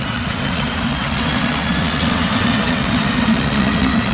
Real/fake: fake